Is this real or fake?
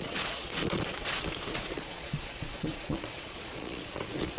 fake